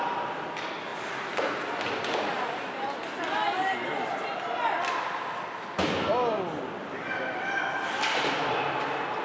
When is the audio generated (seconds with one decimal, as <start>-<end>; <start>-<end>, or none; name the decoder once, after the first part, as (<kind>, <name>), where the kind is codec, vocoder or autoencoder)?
none